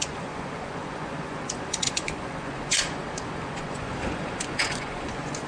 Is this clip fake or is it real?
fake